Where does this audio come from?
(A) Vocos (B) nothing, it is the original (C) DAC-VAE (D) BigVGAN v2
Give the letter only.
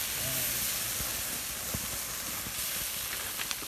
B